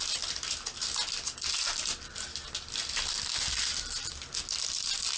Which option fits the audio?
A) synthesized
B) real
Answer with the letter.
B